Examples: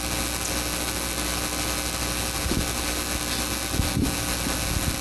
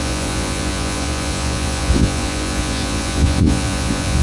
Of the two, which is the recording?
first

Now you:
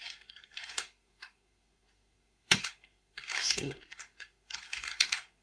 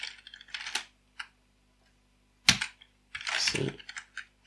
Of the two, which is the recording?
second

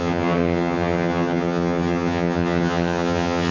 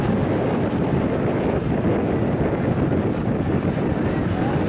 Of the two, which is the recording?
second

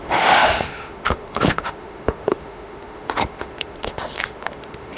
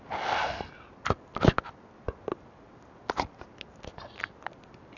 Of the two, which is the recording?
second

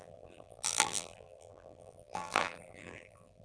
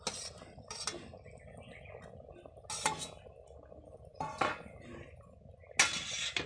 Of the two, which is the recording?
second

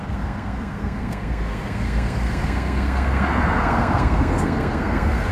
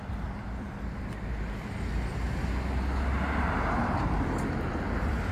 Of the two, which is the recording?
second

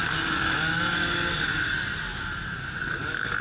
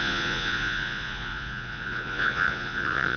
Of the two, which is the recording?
first